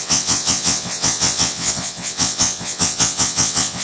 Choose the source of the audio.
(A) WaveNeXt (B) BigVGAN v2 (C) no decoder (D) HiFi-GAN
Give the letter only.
A